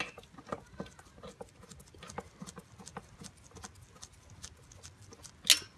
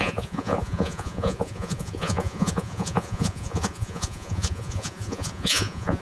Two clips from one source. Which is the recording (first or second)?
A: first